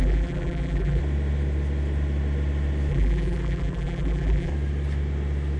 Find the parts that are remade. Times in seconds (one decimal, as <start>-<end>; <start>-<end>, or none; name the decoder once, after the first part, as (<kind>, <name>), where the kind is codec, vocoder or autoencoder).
0.0-1.0 (vocoder, BigVGAN v2); 2.9-4.5